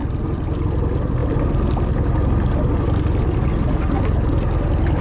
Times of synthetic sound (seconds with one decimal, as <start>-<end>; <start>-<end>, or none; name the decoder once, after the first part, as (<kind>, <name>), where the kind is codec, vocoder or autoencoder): none